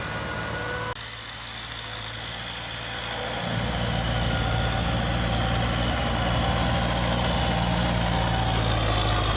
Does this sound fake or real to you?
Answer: real